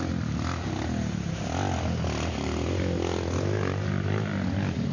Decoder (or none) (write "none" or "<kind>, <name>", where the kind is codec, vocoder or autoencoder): none